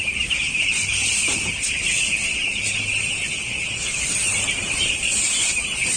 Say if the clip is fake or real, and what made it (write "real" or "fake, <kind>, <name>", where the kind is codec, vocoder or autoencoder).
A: real